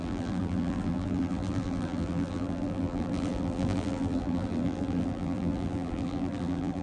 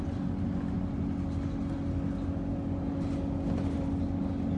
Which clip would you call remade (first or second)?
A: first